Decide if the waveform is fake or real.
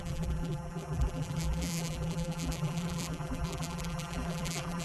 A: fake